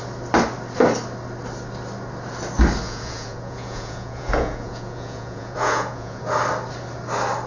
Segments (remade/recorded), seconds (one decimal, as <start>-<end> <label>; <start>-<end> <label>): 0.0-2.8 recorded; 2.8-6.2 remade; 6.2-7.5 recorded